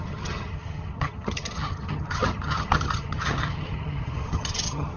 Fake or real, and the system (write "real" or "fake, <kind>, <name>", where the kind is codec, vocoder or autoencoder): fake, vocoder, HiFi-GAN